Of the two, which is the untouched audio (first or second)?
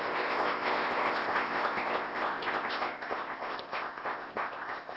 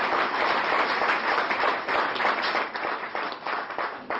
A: second